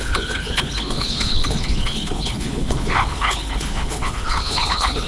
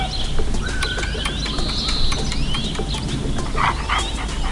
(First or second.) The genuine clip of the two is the second